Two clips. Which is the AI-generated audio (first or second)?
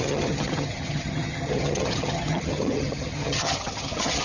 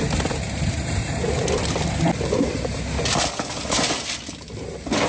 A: first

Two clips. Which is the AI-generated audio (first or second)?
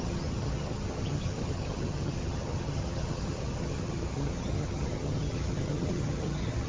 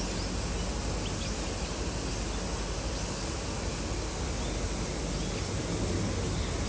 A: first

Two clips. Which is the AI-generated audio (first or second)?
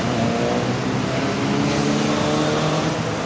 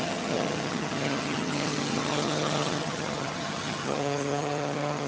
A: second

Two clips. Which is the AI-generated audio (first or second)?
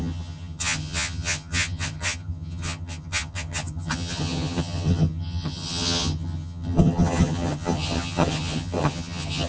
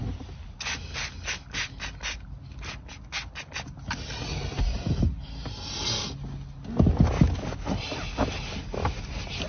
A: first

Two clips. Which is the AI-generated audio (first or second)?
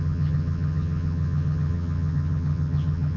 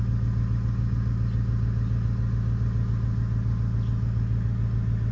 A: first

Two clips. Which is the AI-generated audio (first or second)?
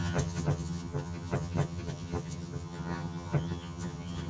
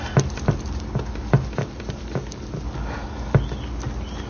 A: first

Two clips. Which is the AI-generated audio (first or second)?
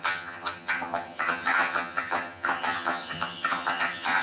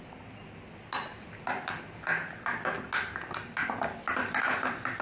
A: first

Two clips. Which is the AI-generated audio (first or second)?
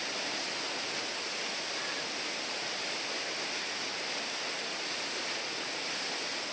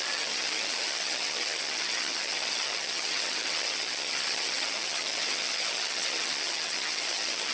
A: second